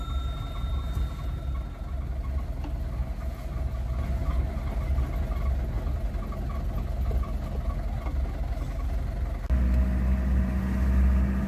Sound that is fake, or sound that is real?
real